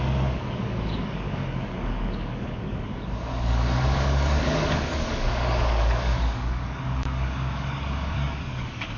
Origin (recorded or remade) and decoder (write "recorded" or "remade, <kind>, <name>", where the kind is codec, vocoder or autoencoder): remade, codec, DAC